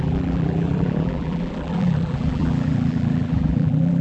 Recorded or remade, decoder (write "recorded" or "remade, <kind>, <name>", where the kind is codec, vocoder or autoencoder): remade, vocoder, BigVGAN v2